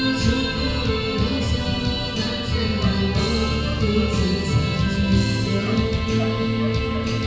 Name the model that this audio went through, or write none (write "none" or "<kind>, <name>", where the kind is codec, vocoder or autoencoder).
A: none